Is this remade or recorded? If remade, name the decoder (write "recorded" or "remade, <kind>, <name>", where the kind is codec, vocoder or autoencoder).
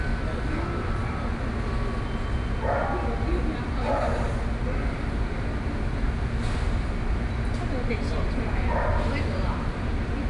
recorded